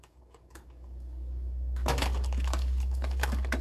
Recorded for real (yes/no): no